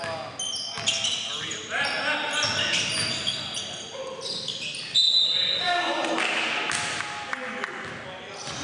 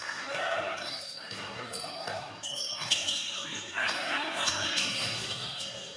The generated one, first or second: second